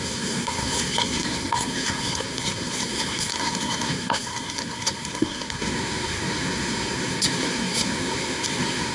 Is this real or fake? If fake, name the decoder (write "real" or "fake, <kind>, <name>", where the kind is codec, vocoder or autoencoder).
fake, codec, SNAC